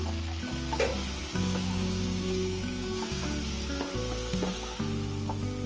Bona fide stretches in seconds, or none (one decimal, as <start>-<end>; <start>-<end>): 0.0-1.2; 3.2-4.3; 4.8-5.7